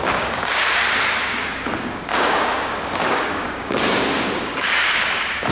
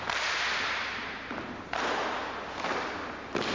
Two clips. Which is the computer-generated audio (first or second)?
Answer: first